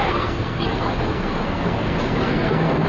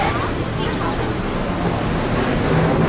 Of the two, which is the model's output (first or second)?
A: first